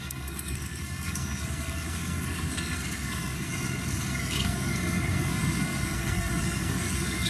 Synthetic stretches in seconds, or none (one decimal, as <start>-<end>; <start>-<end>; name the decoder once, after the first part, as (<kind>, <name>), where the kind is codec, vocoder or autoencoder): 0.0-7.3 (codec, SNAC)